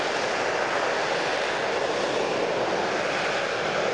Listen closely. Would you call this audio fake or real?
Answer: real